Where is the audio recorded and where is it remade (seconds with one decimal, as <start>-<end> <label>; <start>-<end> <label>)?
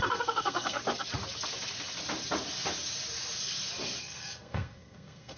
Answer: 0.0-0.8 remade; 0.8-4.0 recorded; 4.0-5.4 remade